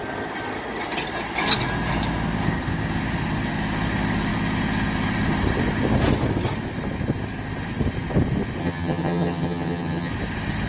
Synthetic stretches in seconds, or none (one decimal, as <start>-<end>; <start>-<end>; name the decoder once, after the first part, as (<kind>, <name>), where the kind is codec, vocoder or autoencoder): 8.6-10.1 (vocoder, HiFi-GAN)